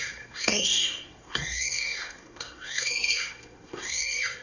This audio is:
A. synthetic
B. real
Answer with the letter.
A